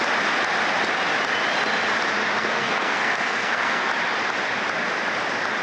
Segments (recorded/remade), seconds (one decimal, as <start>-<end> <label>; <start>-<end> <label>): 0.0-2.4 recorded; 2.4-3.9 remade; 3.9-5.6 recorded